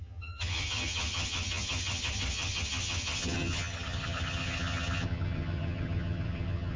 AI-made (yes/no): yes